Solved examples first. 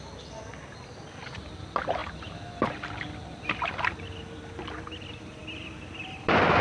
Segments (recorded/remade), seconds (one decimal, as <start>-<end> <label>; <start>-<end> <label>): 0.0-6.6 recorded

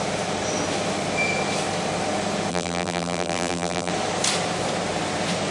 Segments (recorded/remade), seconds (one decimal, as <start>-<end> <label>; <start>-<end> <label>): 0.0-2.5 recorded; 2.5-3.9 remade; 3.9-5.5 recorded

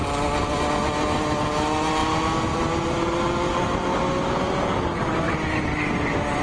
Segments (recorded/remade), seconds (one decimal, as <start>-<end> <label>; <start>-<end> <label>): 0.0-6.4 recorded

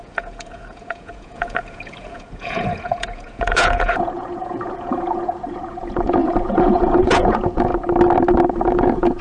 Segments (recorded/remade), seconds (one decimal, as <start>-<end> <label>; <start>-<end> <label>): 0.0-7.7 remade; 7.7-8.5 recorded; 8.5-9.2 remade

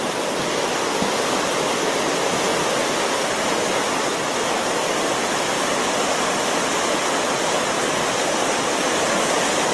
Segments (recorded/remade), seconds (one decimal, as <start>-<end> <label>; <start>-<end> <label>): 0.0-9.7 recorded

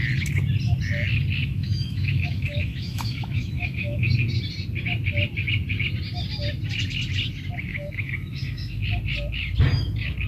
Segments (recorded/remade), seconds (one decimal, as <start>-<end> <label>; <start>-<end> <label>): 0.0-1.4 recorded; 1.4-4.1 remade; 4.1-7.7 recorded; 7.7-8.8 remade; 8.8-10.3 recorded